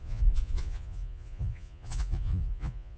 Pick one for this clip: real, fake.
fake